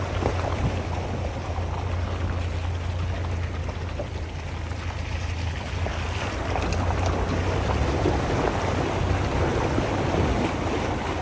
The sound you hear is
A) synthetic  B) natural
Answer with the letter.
B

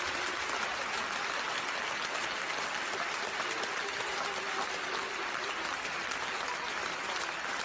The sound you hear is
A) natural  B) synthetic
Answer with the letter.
A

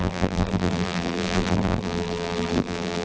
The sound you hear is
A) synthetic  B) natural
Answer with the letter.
A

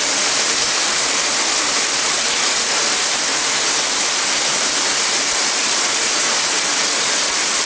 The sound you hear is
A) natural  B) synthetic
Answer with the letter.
B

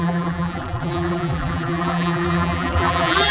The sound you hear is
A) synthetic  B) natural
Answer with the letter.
A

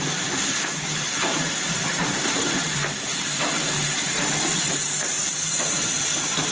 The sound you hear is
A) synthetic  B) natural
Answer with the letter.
A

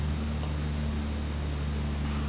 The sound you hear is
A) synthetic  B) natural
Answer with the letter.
B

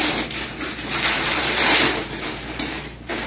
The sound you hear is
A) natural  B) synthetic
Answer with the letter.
B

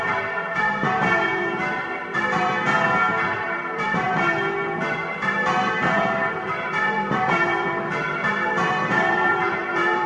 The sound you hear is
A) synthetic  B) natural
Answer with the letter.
A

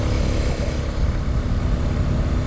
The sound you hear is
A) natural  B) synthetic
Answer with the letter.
A